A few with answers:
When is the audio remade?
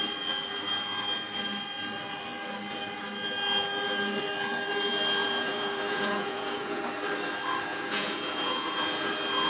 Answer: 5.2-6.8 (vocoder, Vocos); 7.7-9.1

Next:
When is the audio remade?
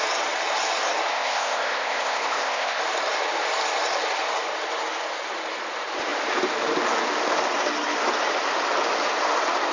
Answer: 1.1-2.8 (codec, ZipCodec)